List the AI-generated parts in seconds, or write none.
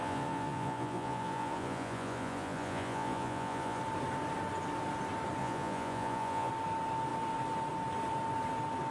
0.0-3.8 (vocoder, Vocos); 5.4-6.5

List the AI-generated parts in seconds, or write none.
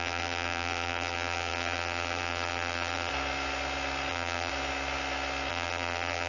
0.0-3.1 (vocoder, BigVGAN v2); 4.1-4.5; 5.5-6.3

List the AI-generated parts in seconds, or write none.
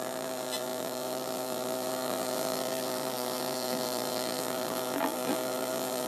0.0-6.1 (vocoder, BigVGAN v2)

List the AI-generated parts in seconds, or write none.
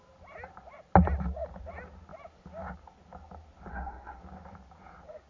3.7-4.2 (codec, SNAC)